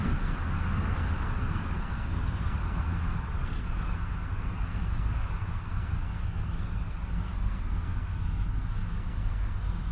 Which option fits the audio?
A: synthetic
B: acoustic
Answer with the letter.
A